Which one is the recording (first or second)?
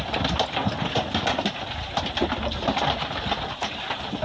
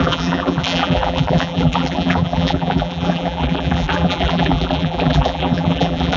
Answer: first